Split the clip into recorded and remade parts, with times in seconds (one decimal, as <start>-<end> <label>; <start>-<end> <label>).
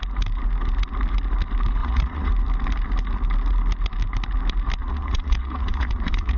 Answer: 0.0-1.8 recorded; 1.8-2.3 remade; 2.3-4.8 recorded; 4.8-6.4 remade